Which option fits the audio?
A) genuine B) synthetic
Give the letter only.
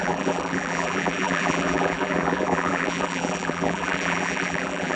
B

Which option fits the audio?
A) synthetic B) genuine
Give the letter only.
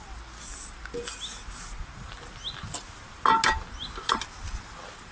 B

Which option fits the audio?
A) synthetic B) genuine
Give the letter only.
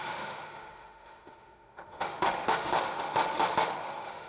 A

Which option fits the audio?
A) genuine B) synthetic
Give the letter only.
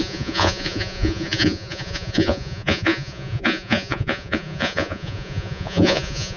B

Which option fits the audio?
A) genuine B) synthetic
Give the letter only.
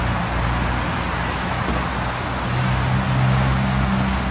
A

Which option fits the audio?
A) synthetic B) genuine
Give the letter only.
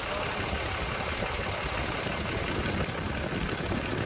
B